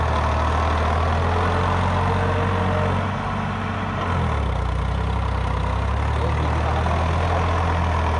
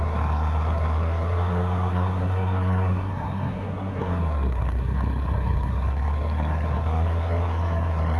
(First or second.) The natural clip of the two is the first